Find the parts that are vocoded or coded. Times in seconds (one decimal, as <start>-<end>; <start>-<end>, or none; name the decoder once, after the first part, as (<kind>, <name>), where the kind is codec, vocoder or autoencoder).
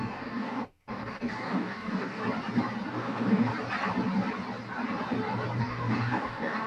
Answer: 0.0-2.2 (codec, DAC); 2.9-3.5; 5.6-6.7